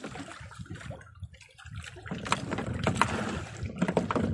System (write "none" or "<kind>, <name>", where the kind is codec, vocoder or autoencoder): none